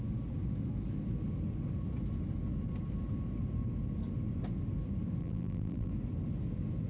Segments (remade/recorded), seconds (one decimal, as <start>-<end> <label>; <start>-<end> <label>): 0.0-5.2 recorded; 5.2-5.9 remade; 5.9-6.9 recorded